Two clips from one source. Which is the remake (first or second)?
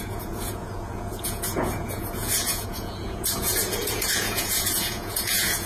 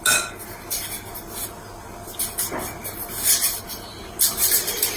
first